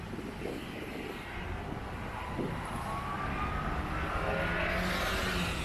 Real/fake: real